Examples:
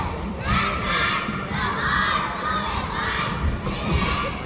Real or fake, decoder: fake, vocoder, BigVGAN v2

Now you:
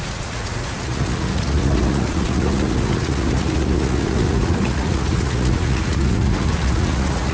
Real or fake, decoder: fake, vocoder, Vocos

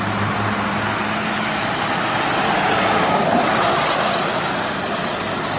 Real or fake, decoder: real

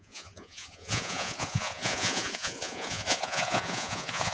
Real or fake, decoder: fake, vocoder, Vocos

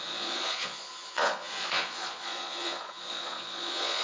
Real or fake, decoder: fake, vocoder, Vocos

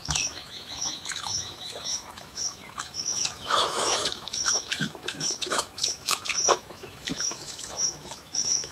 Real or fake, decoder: fake, autoencoder, DAC-VAE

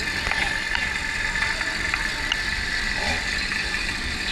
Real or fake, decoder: real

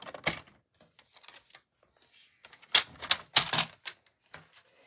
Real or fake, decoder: real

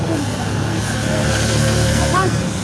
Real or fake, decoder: fake, codec, SNAC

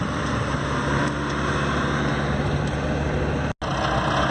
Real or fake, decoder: real